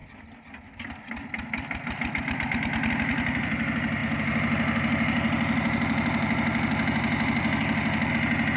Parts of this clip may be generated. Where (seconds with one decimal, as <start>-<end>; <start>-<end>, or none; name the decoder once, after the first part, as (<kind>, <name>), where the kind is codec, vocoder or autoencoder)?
4.0-8.1 (vocoder, BigVGAN v2)